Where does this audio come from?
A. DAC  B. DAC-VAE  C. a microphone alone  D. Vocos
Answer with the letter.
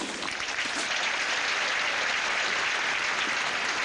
C